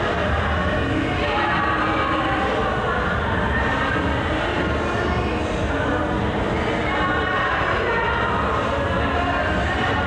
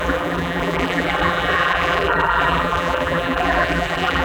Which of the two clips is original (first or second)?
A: first